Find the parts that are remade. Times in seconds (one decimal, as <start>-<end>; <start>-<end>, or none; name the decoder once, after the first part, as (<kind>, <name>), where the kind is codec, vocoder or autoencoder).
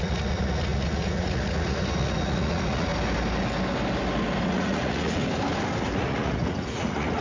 0.0-2.9 (vocoder, Vocos); 4.5-5.2; 5.8-7.2